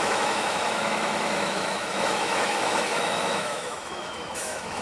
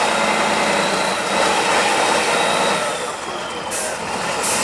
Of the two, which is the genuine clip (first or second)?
second